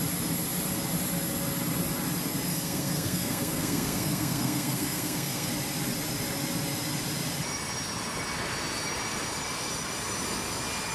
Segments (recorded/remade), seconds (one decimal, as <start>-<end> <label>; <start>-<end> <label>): 0.0-2.5 recorded; 2.5-5.5 remade; 5.5-10.9 recorded